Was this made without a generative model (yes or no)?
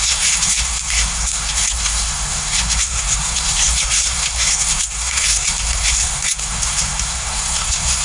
no